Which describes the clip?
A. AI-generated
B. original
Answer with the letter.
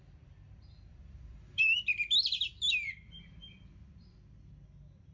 A